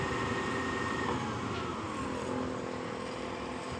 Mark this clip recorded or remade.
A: recorded